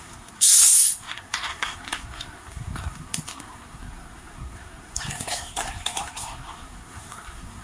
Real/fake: fake